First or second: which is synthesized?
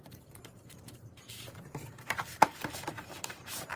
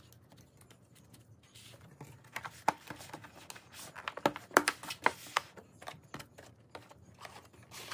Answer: first